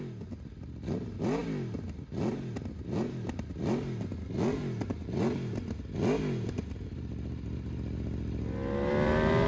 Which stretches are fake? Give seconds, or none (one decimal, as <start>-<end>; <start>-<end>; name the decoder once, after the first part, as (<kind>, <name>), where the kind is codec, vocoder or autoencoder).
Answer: none

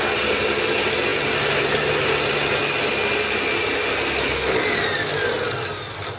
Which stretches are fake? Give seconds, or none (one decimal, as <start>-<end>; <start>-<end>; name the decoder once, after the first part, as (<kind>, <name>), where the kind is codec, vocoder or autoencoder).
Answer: none

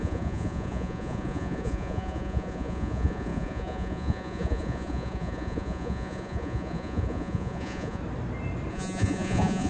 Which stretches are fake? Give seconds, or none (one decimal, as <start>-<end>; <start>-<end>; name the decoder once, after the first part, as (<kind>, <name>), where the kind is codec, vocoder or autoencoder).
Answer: 0.0-8.0 (vocoder, Vocos); 8.7-9.7